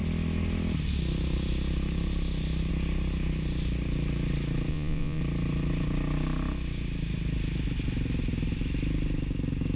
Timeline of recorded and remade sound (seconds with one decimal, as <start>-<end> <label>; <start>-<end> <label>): 0.0-4.7 recorded; 4.7-5.2 remade; 5.2-9.8 recorded